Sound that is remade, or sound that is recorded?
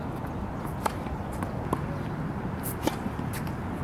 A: recorded